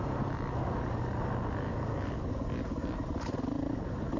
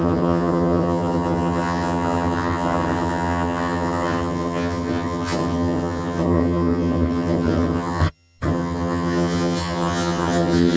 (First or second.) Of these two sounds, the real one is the first